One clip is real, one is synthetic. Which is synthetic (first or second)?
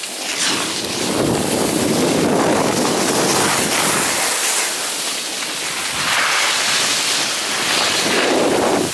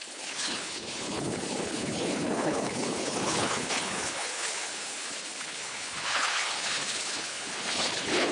second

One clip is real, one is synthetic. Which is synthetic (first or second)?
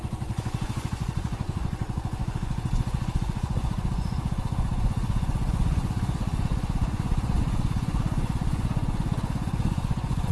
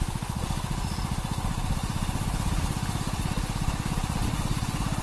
first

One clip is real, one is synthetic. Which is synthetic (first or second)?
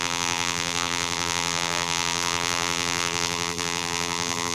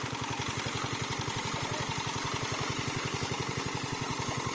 first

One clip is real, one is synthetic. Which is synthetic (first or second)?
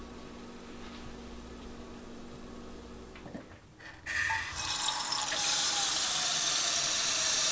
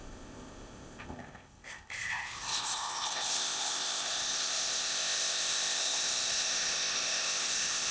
second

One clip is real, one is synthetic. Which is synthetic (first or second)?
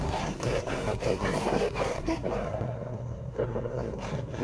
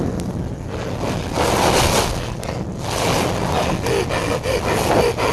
first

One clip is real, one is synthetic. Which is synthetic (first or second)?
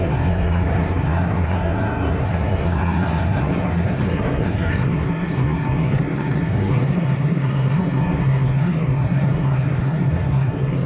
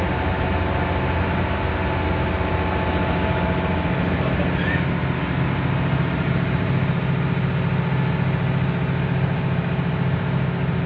first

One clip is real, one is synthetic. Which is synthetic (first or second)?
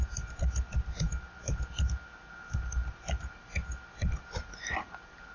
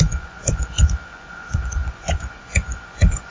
second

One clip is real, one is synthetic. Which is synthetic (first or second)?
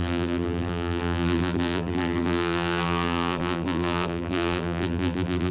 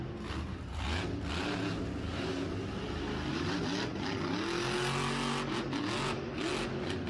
first